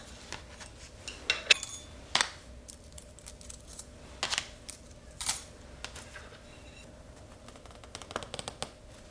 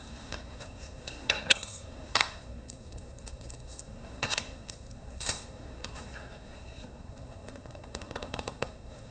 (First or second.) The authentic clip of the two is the first